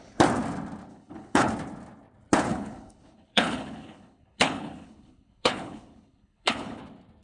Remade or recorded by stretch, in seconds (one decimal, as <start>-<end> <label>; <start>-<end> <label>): 0.0-0.9 recorded; 0.9-1.5 remade; 1.5-2.5 recorded; 2.5-6.8 remade; 6.8-7.2 recorded